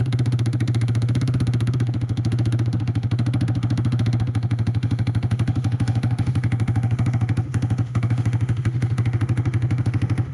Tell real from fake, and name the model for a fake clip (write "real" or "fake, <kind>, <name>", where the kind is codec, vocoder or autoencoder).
fake, autoencoder, DAC-VAE